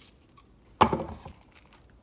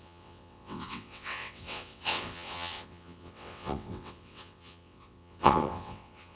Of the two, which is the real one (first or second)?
first